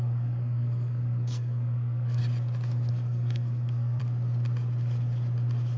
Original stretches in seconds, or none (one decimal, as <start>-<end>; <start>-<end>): 2.2-2.9; 4.0-5.8